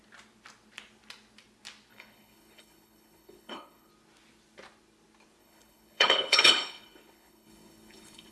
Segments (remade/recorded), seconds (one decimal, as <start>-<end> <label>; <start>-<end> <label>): 0.0-1.9 recorded; 1.9-3.9 remade; 3.9-5.4 recorded; 5.4-8.3 remade